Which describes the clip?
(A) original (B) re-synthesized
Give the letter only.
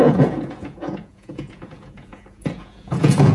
B